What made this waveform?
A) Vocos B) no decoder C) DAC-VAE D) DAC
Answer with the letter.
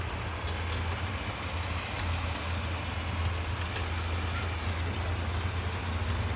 B